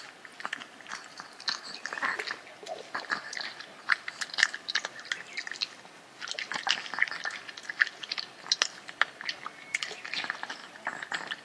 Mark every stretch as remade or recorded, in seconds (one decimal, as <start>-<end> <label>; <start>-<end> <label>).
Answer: 0.0-11.4 recorded